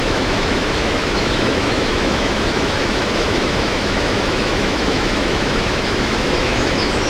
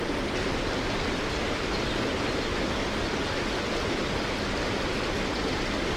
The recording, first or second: second